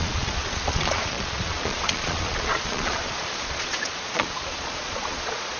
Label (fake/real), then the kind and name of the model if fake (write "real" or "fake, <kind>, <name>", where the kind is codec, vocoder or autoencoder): fake, vocoder, Vocos